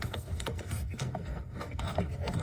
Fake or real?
fake